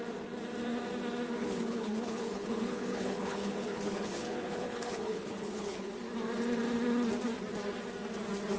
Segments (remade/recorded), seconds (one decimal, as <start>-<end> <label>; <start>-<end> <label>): 0.0-1.4 recorded; 1.4-5.9 remade; 5.9-8.6 recorded